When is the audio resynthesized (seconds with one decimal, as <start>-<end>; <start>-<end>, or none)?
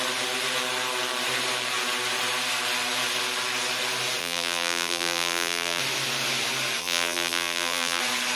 4.2-5.8; 6.8-8.0